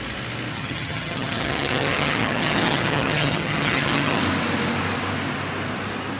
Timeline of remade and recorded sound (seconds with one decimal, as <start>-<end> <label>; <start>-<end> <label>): 0.0-0.5 recorded; 0.5-4.2 remade; 4.2-6.2 recorded